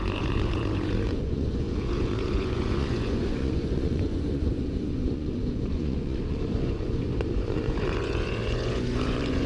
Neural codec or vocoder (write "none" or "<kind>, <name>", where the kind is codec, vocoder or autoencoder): vocoder, Vocos